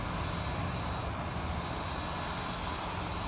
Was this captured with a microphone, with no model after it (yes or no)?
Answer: yes